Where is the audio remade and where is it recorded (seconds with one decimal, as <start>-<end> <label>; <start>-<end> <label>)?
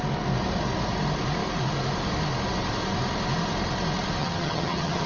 0.0-4.2 recorded; 4.2-5.1 remade